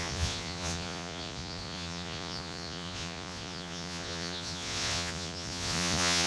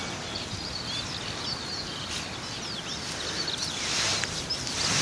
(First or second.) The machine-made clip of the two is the first